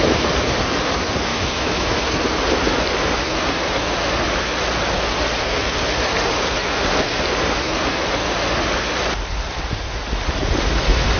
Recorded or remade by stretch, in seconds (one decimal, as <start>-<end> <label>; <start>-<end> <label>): 0.0-1.3 recorded; 1.3-2.0 remade; 2.0-11.2 recorded